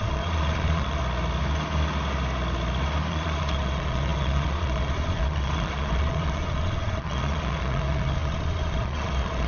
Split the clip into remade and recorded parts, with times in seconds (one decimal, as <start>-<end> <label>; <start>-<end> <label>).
0.0-1.0 remade; 1.0-3.1 recorded; 3.1-9.5 remade